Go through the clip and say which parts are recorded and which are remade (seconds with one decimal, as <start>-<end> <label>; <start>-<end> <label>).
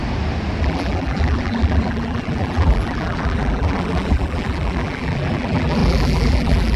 0.0-0.6 recorded; 0.6-6.8 remade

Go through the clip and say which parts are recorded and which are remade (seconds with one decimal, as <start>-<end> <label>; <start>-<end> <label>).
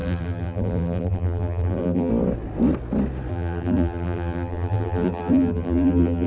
0.0-2.1 remade; 2.1-3.3 recorded; 3.3-6.3 remade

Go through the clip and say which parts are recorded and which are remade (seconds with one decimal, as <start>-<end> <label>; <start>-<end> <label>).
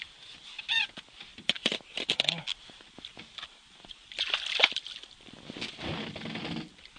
0.0-1.3 recorded; 1.3-2.1 remade; 2.1-7.0 recorded